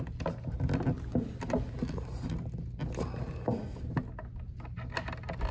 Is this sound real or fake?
real